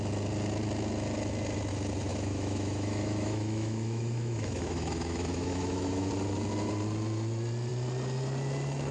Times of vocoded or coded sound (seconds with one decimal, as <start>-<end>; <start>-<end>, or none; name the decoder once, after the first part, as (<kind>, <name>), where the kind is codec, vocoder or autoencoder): 2.1-6.1 (autoencoder, DAC-VAE)